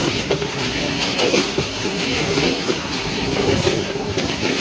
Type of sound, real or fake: fake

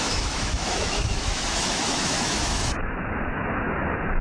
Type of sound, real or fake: fake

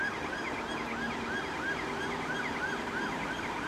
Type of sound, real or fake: real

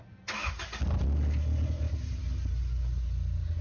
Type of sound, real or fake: real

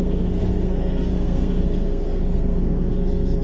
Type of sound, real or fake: fake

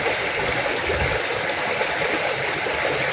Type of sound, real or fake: real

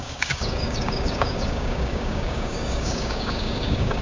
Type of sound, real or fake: fake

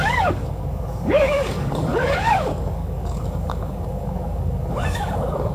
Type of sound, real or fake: fake